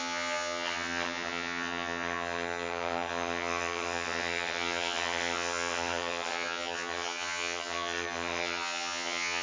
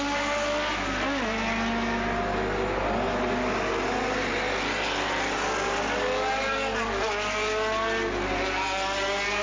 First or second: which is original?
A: second